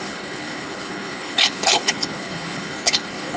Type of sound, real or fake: fake